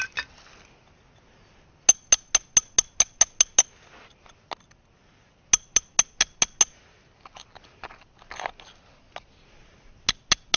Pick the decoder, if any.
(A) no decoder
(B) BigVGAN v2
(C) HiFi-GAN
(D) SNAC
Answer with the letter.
A